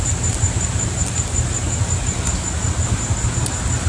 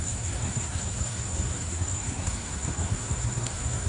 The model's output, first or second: second